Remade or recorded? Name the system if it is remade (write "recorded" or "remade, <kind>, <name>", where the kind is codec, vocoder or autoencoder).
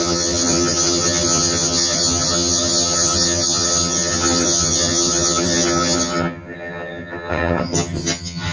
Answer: remade, vocoder, HiFi-GAN